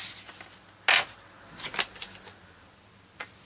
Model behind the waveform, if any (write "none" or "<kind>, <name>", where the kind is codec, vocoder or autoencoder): none